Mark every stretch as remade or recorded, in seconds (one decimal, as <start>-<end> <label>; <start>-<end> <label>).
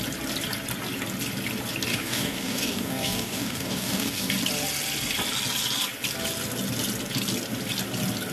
0.0-1.9 recorded; 1.9-4.3 remade; 4.3-8.3 recorded